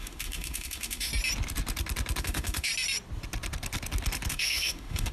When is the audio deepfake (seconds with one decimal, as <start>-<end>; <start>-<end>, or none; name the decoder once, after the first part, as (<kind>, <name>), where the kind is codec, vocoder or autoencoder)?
0.0-1.1 (autoencoder, DAC-VAE); 2.2-2.7; 4.3-5.1